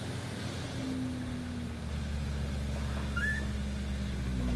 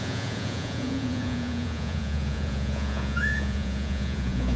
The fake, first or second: second